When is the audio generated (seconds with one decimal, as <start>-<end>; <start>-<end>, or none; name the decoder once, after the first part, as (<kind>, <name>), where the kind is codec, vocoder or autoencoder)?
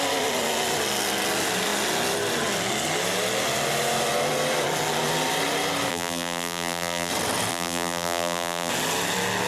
5.9-7.1 (vocoder, BigVGAN v2); 7.5-8.7